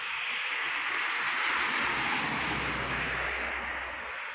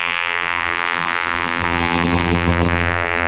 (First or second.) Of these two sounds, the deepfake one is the second